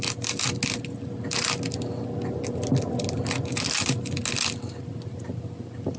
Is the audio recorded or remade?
recorded